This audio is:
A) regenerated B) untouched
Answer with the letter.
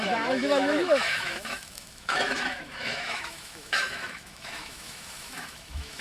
A